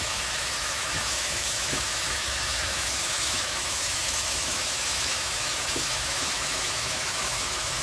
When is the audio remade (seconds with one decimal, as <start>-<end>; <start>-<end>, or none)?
0.0-7.8